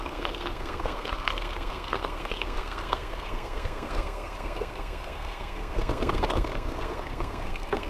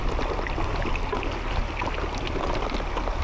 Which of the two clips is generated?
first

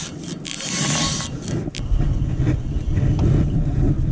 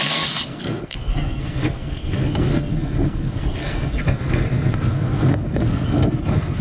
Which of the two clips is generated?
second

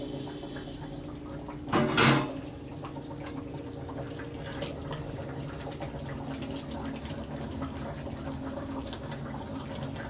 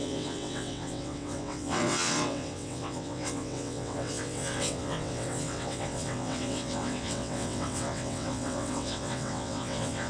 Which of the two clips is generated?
second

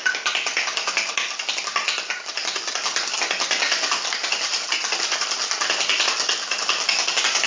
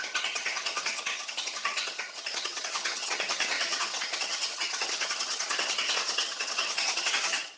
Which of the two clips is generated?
second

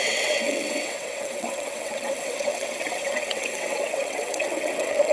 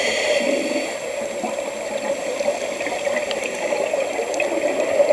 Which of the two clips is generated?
first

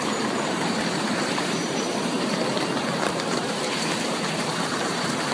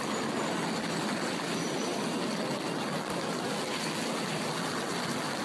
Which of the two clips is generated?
first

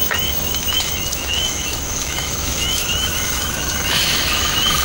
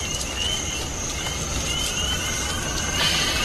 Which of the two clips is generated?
first